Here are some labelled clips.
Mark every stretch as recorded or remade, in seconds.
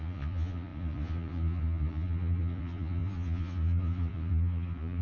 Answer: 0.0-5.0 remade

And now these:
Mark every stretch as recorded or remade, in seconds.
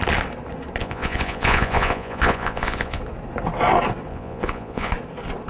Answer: 0.0-0.8 recorded; 0.8-3.0 remade; 3.0-4.1 recorded; 4.1-4.9 remade; 4.9-5.5 recorded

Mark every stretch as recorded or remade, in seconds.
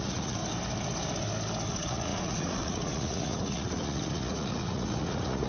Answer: 0.0-0.4 remade; 0.4-1.7 recorded; 1.7-5.5 remade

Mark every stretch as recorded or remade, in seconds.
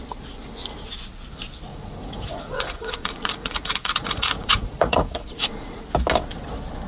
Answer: 0.0-1.7 recorded; 1.7-5.8 remade; 5.8-6.9 recorded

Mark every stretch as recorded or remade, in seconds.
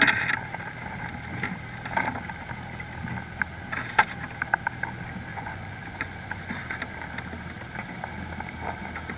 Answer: 0.0-5.3 recorded; 5.3-6.6 remade; 6.6-9.2 recorded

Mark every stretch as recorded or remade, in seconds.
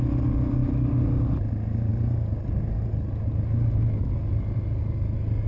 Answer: 0.0-5.5 recorded